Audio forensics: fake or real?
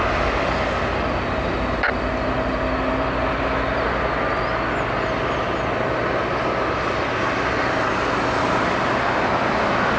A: real